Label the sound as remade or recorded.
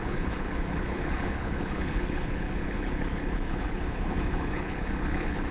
remade